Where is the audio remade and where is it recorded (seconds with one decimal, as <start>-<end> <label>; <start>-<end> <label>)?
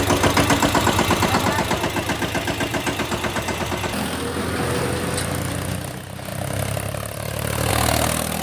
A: 0.0-2.7 recorded; 2.7-3.7 remade; 3.7-6.3 recorded; 6.3-7.7 remade; 7.7-8.4 recorded